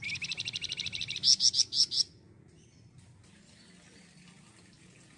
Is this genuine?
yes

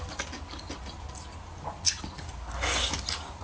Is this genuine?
yes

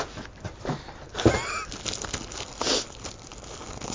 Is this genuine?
yes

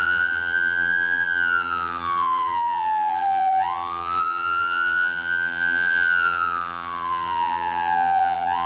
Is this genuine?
no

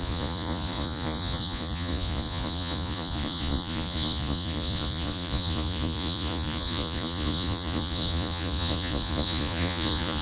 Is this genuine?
no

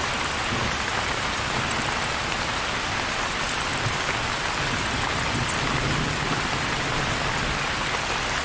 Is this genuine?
yes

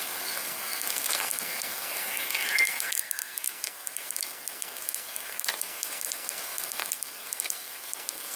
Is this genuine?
no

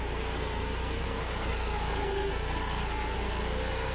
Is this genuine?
no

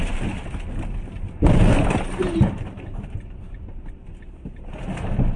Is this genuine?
yes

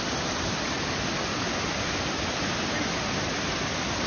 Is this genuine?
yes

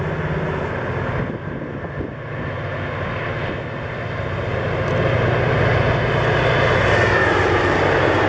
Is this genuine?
yes